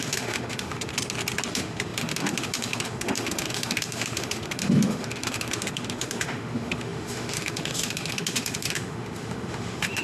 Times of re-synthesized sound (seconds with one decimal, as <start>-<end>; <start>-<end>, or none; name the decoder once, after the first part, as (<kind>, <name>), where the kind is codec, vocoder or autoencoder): 0.0-0.9 (autoencoder, DAC-VAE); 1.5-10.0